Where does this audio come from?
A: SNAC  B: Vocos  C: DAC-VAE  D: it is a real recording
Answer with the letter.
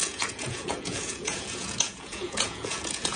B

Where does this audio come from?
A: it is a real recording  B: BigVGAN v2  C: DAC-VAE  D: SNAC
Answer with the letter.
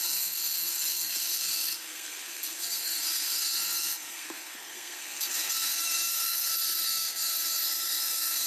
D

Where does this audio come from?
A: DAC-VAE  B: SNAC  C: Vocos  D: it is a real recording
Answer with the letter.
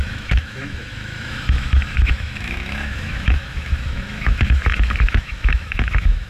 A